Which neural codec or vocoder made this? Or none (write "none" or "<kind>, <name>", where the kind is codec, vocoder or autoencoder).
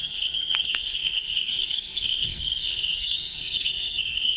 codec, SNAC